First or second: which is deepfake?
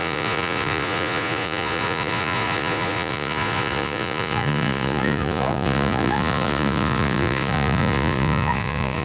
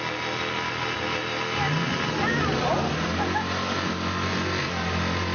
first